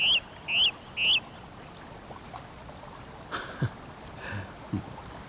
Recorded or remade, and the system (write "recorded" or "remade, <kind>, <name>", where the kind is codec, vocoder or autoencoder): recorded